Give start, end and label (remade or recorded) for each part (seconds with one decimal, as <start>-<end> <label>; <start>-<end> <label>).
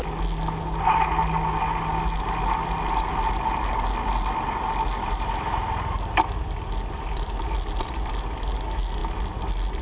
0.0-9.8 recorded